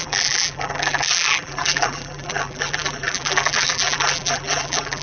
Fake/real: fake